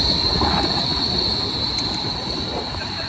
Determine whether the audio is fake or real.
fake